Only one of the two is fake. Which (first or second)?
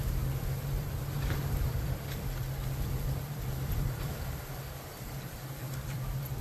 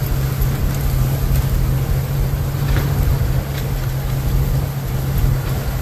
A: first